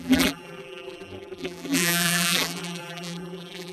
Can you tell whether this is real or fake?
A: fake